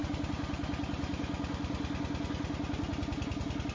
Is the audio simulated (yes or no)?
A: no